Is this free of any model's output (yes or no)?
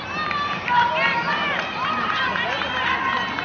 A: no